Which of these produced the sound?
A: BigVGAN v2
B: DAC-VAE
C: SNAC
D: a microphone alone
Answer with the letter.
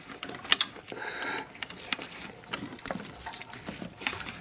D